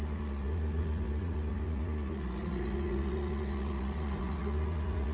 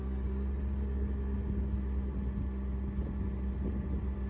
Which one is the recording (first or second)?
second